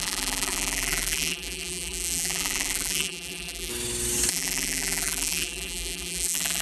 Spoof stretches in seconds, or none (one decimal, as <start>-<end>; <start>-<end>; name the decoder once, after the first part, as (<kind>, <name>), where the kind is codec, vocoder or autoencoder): 0.0-3.7 (vocoder, BigVGAN v2); 4.3-6.6

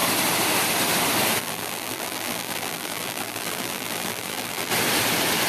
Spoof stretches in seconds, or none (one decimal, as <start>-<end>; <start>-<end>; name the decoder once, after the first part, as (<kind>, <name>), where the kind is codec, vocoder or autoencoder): 1.4-4.7 (vocoder, BigVGAN v2)